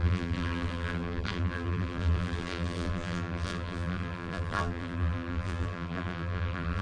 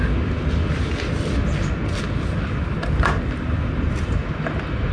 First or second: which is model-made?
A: first